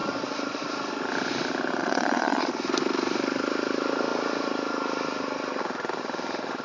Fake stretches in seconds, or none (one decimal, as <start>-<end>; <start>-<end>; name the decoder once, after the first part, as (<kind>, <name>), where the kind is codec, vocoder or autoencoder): 1.8-2.5 (vocoder, Vocos)